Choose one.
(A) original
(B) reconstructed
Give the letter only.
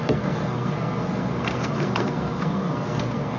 B